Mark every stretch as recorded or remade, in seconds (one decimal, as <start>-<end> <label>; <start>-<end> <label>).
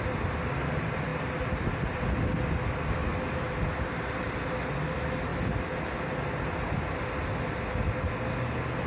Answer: 0.0-1.1 recorded; 1.1-1.7 remade; 1.7-3.1 recorded; 3.1-4.2 remade; 4.2-8.9 recorded